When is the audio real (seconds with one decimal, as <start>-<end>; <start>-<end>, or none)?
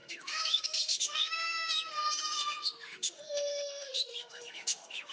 none